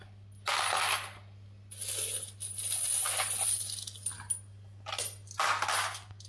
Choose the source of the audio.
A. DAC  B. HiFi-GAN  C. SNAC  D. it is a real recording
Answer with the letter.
D